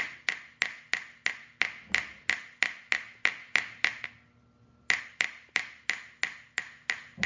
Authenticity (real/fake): real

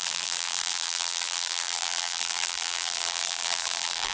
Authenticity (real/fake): fake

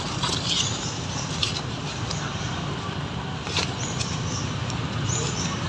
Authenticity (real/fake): fake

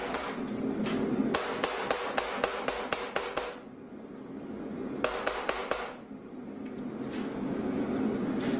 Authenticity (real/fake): real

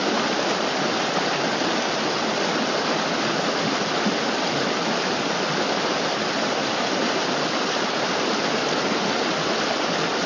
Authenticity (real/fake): fake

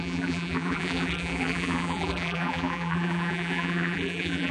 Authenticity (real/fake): fake